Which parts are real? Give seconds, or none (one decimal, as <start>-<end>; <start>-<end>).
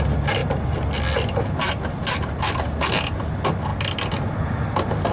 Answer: 0.0-5.1